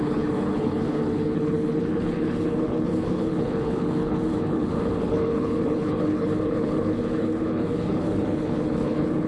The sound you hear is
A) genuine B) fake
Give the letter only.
B